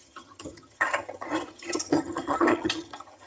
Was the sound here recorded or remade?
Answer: remade